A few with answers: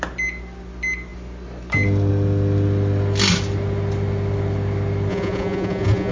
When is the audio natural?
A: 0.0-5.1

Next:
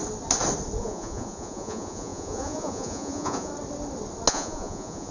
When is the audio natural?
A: 0.0-0.8; 3.5-4.3

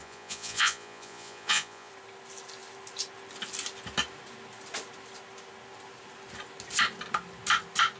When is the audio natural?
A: 1.9-8.0

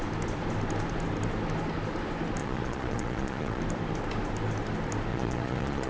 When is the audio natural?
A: 0.0-2.4; 3.6-5.1

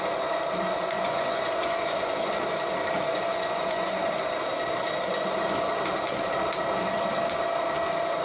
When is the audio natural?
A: 0.0-0.7; 2.3-3.1; 4.0-8.2

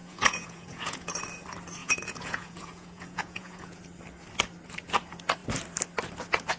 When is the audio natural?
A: 1.1-1.8; 3.8-6.6